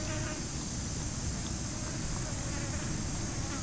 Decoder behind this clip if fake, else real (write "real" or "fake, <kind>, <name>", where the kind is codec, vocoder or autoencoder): real